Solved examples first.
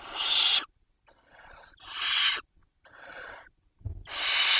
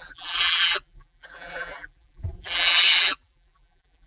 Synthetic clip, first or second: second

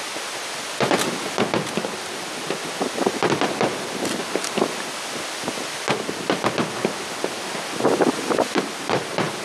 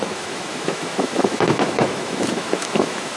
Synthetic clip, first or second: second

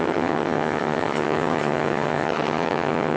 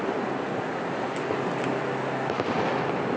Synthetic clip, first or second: first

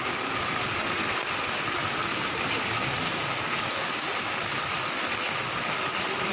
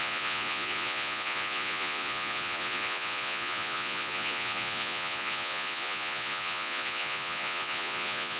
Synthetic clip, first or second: second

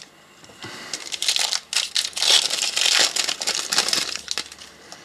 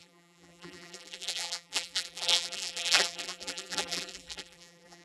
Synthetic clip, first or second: second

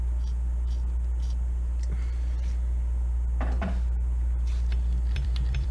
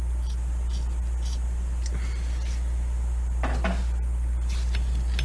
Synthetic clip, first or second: first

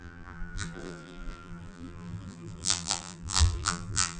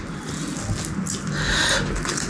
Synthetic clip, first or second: first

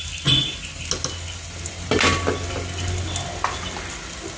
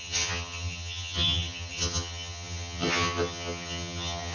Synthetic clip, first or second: second